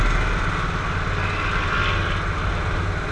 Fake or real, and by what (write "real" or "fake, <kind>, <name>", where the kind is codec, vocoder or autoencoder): real